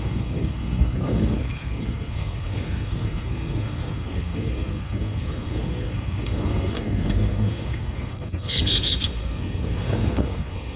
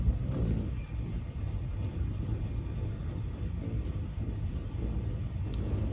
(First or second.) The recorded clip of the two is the second